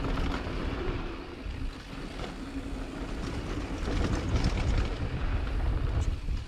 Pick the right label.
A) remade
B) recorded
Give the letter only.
B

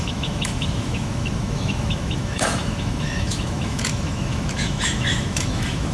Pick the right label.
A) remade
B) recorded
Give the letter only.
A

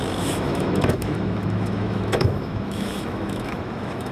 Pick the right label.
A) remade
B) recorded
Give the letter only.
A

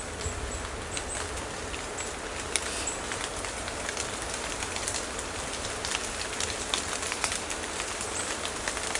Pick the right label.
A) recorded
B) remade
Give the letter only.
A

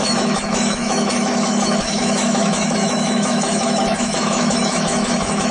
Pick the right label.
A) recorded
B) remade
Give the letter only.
B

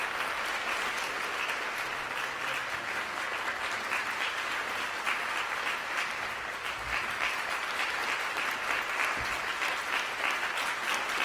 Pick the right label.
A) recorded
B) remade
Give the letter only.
A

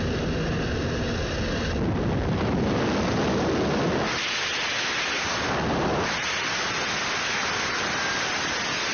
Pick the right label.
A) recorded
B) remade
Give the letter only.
A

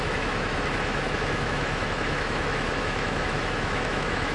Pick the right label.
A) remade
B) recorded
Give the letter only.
A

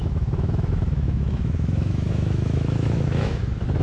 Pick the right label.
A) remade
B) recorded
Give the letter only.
A